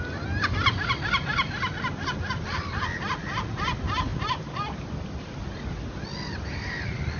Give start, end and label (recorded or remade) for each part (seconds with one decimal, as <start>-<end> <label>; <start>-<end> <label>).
0.0-7.2 recorded